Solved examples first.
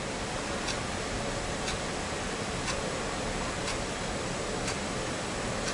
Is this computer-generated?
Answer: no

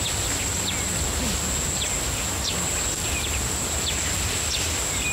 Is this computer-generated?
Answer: no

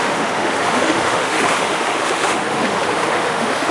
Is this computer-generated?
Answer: yes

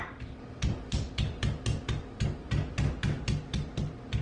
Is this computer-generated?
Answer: no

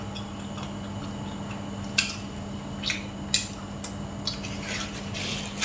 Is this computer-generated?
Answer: no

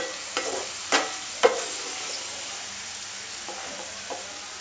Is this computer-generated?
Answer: no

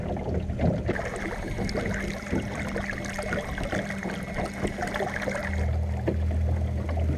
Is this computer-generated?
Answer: no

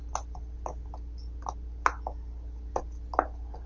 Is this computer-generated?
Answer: no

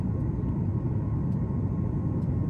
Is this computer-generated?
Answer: no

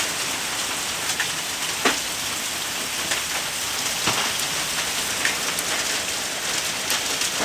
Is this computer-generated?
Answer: no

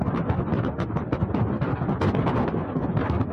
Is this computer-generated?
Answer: no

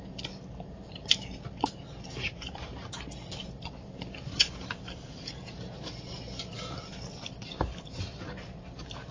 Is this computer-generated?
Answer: no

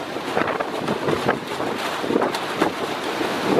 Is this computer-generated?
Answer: no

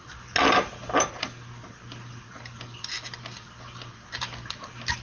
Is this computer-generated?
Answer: no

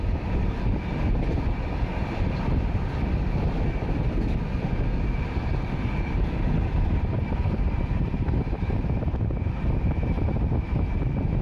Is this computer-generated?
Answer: no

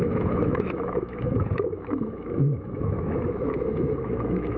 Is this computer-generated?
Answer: yes